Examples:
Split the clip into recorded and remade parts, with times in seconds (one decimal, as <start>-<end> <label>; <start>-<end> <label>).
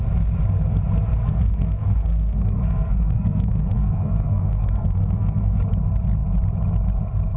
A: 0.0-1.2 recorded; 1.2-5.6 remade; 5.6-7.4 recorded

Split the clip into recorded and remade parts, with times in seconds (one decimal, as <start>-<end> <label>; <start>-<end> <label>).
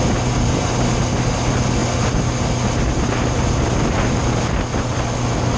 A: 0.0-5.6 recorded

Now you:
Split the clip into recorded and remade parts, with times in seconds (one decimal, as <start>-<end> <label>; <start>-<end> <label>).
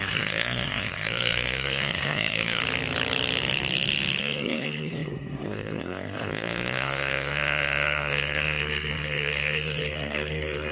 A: 0.0-2.6 remade; 2.6-4.2 recorded; 4.2-10.7 remade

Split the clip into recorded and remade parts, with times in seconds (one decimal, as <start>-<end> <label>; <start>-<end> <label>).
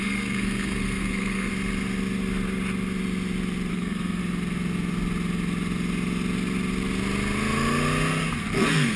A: 0.0-1.5 remade; 1.5-3.7 recorded; 3.7-4.2 remade; 4.2-8.4 recorded; 8.4-9.0 remade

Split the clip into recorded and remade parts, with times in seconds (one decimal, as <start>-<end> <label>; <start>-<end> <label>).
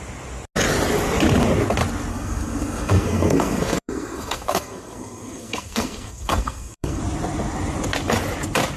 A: 0.0-2.1 recorded; 2.1-7.0 remade; 7.0-8.8 recorded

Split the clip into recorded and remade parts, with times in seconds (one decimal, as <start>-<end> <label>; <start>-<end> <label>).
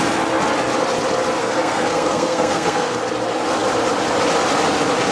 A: 0.0-1.4 recorded; 1.4-3.0 remade; 3.0-5.1 recorded